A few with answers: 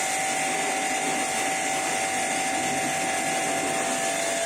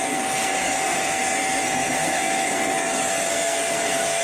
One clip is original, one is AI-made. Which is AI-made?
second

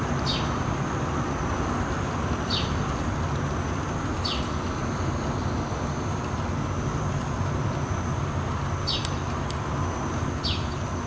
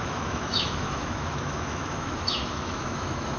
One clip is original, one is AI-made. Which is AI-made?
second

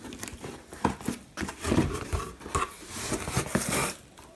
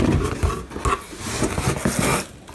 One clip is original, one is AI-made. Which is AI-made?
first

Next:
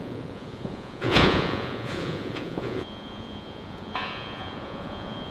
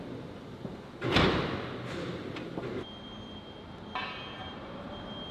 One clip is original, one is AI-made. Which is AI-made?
first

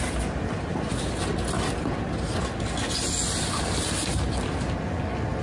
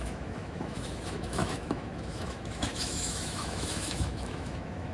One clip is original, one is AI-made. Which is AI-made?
second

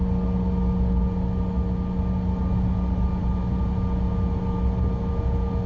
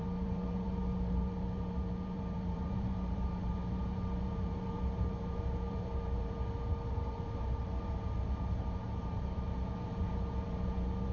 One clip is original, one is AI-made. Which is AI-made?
second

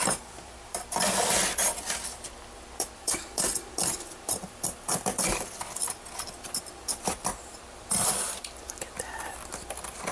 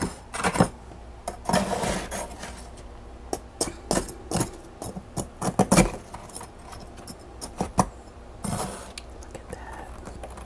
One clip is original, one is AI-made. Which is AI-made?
first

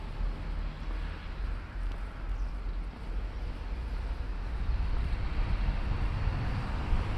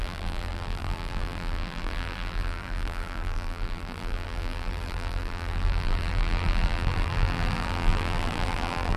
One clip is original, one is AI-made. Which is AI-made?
second